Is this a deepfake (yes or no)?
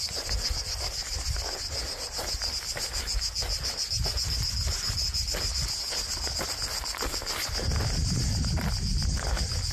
no